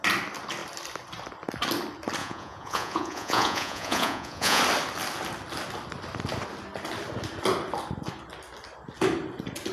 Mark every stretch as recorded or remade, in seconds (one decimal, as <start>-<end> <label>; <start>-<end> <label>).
0.0-2.2 recorded; 2.2-4.6 remade; 4.6-9.7 recorded